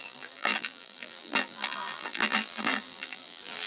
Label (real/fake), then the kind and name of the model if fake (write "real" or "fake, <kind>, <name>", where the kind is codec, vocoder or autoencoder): fake, vocoder, BigVGAN v2